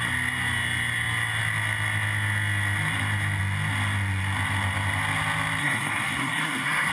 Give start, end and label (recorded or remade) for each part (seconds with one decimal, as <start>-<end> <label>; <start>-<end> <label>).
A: 0.0-5.6 recorded; 5.6-6.9 remade